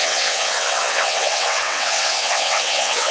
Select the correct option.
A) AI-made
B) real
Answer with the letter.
A